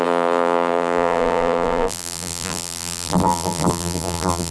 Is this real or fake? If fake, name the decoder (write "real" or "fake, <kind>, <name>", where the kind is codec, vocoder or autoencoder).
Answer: fake, vocoder, BigVGAN v2